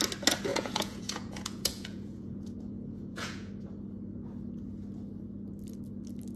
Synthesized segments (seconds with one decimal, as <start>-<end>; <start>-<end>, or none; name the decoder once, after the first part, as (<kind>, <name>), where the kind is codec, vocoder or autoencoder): 0.5-3.5 (vocoder, Vocos)